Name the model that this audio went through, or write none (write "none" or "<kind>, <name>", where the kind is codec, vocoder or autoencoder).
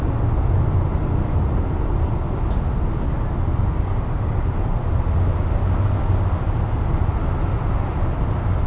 none